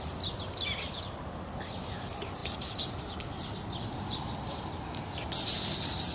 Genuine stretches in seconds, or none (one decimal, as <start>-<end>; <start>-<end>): 0.0-6.1